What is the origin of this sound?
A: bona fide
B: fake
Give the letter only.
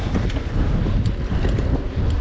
A